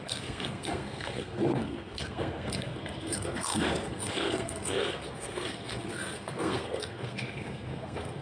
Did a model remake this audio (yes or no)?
yes